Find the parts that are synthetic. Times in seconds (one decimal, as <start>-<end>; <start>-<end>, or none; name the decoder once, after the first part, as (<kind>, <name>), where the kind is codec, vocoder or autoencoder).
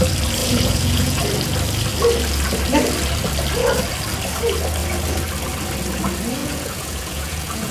0.4-1.2 (vocoder, Vocos); 6.4-7.7